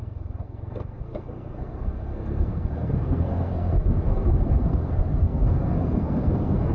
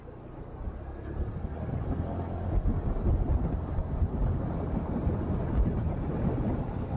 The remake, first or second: first